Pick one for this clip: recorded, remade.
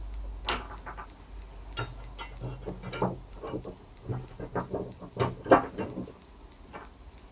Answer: recorded